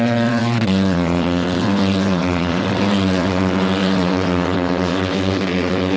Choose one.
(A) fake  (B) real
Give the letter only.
A